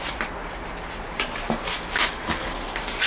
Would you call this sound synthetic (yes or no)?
no